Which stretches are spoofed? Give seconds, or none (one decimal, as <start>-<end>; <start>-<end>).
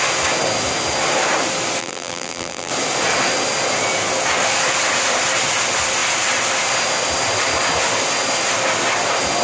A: 1.8-2.7